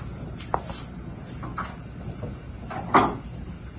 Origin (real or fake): real